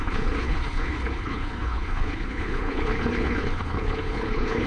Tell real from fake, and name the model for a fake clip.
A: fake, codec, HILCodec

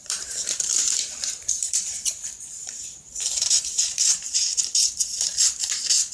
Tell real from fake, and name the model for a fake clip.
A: fake, vocoder, BigVGAN v2